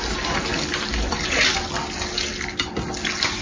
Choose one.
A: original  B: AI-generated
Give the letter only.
A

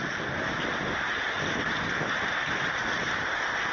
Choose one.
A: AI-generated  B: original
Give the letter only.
B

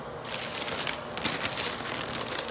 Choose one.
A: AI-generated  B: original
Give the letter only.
B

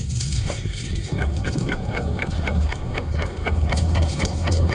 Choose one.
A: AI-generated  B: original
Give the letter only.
A